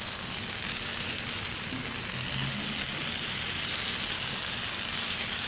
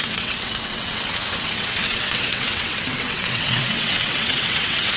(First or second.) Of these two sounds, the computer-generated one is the second